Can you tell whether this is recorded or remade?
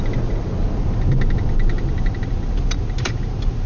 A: recorded